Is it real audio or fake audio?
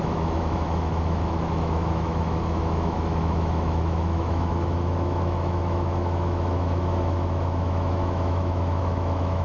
fake